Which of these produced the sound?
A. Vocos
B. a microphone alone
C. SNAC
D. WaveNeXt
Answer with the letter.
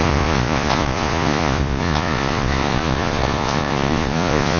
A